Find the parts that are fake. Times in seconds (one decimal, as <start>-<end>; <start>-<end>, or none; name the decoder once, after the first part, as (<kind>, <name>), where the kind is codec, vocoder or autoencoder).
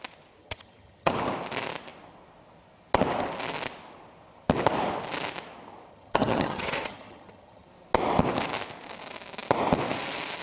0.4-1.1 (vocoder, HiFi-GAN); 5.9-7.7